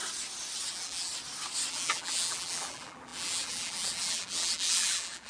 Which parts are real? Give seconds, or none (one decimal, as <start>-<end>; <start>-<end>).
0.0-0.7; 1.1-1.7